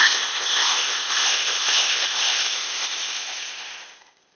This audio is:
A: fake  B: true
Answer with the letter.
A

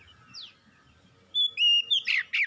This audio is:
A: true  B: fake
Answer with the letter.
A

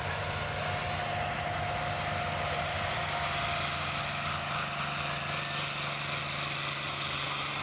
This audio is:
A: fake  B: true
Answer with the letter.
B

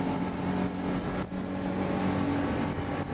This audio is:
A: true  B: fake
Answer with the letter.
A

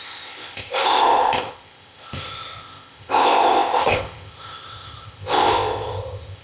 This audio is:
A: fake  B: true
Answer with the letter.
A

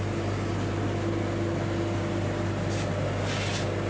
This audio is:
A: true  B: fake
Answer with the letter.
A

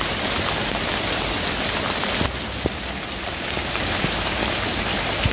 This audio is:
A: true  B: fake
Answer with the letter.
A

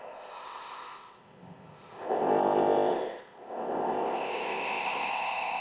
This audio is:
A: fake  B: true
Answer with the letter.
A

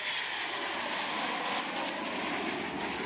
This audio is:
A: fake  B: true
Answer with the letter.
B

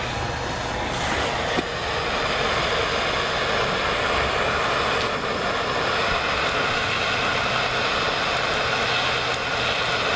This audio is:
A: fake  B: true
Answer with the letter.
B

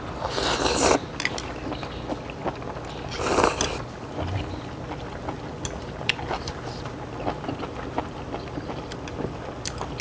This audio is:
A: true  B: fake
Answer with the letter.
A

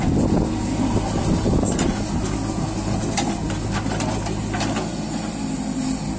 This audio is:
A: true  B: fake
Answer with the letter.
A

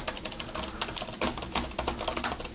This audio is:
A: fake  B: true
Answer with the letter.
B